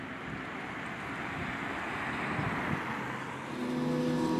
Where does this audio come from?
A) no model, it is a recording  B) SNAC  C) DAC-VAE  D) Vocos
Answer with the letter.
A